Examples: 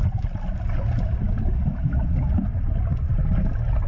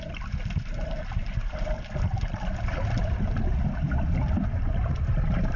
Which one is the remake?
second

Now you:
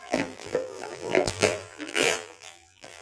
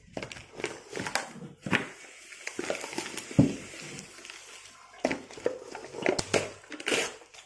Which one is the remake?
first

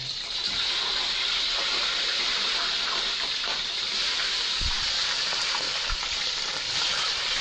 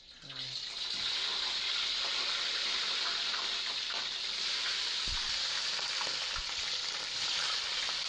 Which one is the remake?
first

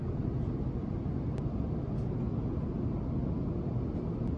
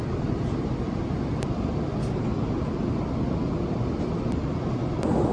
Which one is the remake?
second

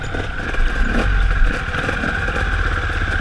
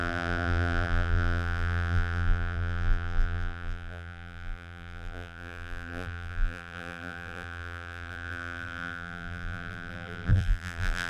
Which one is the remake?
second